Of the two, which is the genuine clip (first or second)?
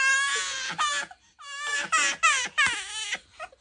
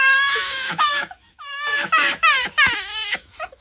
first